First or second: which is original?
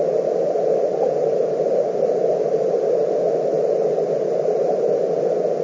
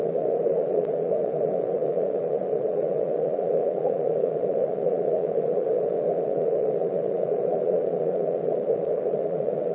first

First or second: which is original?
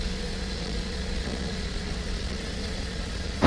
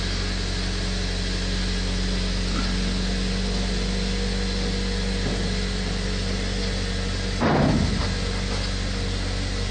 second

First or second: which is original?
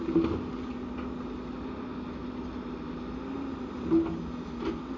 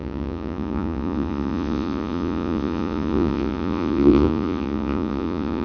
first